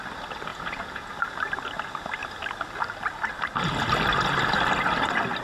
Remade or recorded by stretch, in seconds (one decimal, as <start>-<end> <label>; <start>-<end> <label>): 0.0-0.5 recorded; 0.5-1.1 remade; 1.1-5.4 recorded